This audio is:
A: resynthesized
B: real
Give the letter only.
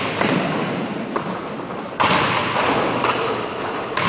B